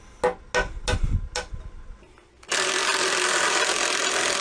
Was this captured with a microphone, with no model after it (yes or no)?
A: yes